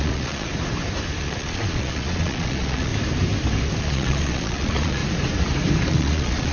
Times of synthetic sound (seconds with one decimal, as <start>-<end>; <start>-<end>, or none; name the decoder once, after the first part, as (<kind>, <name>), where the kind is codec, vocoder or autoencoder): 0.0-0.5 (vocoder, Vocos); 1.2-2.9; 3.8-5.0; 5.9-6.5